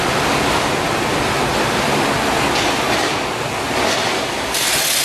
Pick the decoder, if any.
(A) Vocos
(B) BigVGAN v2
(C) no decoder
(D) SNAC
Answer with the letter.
C